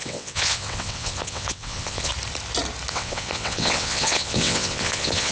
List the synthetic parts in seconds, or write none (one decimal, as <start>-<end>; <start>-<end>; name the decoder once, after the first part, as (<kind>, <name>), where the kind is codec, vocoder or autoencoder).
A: 0.0-2.1 (vocoder, WaveNeXt); 2.9-5.3